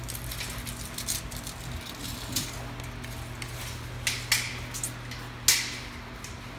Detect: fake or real real